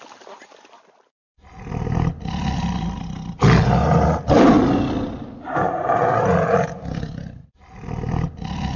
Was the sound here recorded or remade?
recorded